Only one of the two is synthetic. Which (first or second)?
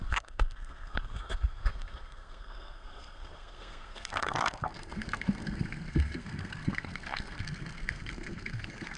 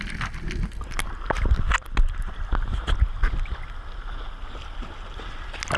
first